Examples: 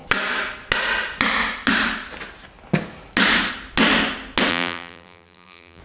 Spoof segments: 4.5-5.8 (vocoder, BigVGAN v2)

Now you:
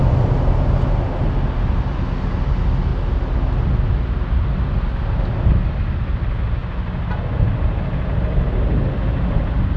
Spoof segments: none

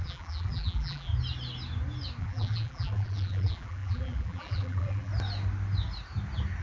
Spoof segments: 0.0-1.1 (vocoder, BigVGAN v2); 2.2-5.1

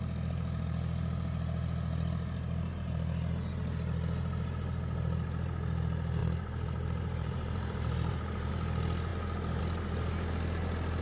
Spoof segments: 6.2-8.5 (vocoder, BigVGAN v2)

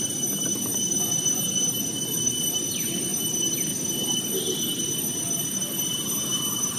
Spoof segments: 0.0-0.7 (vocoder, BigVGAN v2); 1.5-6.8

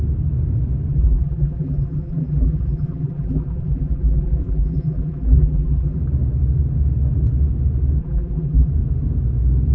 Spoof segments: 0.9-6.0 (vocoder, BigVGAN v2); 8.0-8.7

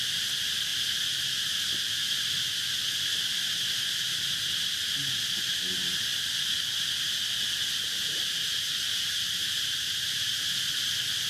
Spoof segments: 8.0-10.5 (vocoder, BigVGAN v2)

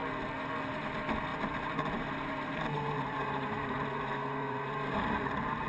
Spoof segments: 1.3-4.0 (vocoder, BigVGAN v2); 4.4-5.7